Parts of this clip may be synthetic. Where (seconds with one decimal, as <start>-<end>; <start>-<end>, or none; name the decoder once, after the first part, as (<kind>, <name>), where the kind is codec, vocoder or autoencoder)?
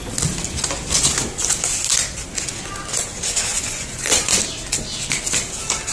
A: 3.5-4.3 (vocoder, Vocos)